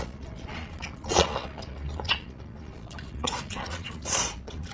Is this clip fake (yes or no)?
yes